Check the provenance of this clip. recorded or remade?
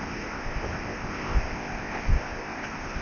remade